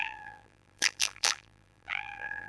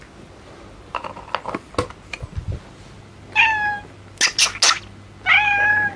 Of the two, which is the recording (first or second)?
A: second